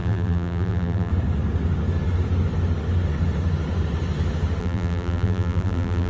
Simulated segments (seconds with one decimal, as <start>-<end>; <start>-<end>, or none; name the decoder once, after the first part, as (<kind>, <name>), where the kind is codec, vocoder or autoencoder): 0.0-1.1 (vocoder, BigVGAN v2); 4.6-6.1